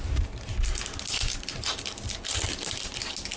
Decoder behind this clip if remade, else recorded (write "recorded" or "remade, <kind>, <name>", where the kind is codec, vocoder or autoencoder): recorded